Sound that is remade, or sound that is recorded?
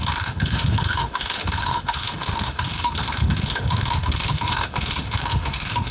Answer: remade